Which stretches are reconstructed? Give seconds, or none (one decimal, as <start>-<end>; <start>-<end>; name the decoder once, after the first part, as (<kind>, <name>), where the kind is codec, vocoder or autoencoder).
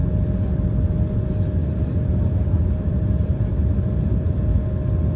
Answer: 1.6-4.7 (vocoder, BigVGAN v2)